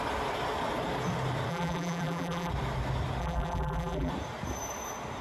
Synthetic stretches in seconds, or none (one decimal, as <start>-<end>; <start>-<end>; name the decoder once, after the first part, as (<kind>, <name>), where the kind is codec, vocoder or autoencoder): 1.5-2.5 (vocoder, BigVGAN v2); 3.2-4.1